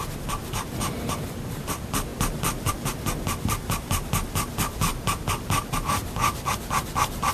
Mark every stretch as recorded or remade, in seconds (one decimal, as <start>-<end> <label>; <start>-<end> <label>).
0.0-4.9 remade; 4.9-5.6 recorded; 5.6-7.3 remade